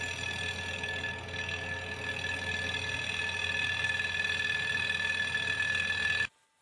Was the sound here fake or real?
real